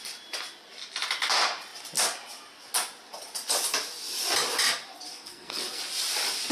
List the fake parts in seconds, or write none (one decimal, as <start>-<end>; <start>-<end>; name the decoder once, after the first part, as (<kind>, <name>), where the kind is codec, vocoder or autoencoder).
5.1-5.8 (codec, SNAC)